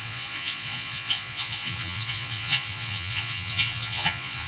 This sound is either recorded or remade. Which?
remade